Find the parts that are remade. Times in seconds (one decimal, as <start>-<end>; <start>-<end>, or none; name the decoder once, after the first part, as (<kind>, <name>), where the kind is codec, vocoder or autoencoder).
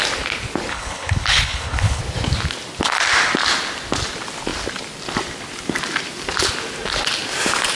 0.7-2.0 (codec, HILCodec)